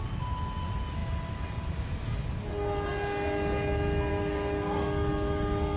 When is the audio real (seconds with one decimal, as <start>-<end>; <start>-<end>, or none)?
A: 0.0-4.1